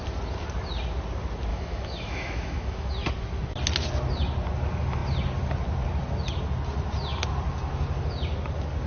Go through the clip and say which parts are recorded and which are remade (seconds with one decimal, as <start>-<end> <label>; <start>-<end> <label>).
0.0-1.5 recorded; 1.5-2.9 remade; 2.9-8.9 recorded